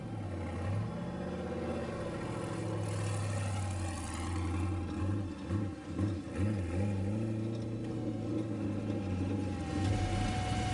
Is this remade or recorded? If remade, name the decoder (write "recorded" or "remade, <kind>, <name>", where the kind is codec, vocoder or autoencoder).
recorded